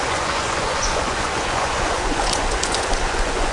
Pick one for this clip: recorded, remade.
remade